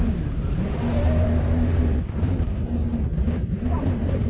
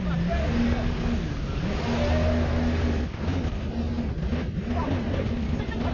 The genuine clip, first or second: second